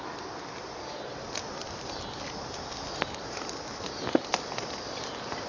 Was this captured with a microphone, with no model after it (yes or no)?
yes